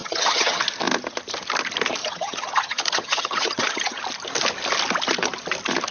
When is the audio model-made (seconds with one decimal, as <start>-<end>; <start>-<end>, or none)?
0.0-0.6; 2.0-4.0